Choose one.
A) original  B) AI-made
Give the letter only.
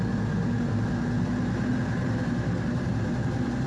A